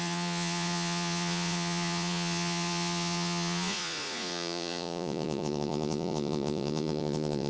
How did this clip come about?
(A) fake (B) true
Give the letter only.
A